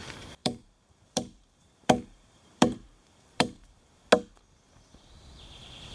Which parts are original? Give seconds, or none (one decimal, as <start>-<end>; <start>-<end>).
0.0-0.4; 3.9-5.9